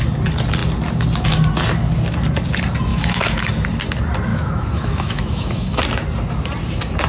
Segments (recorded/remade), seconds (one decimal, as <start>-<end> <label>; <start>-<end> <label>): 0.0-2.9 recorded; 2.9-3.5 remade; 3.5-4.3 recorded; 4.3-5.8 remade; 5.8-7.1 recorded